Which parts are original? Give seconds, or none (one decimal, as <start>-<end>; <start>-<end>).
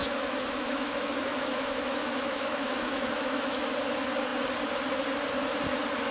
3.7-6.1